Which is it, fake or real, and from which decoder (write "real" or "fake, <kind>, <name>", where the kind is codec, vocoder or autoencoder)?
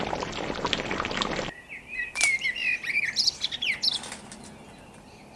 fake, vocoder, BigVGAN v2